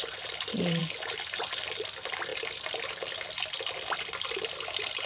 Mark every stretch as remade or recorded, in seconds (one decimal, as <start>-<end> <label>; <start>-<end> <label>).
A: 0.0-5.1 recorded